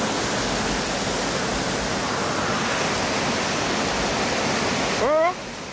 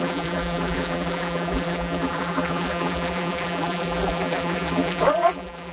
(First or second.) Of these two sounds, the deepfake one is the second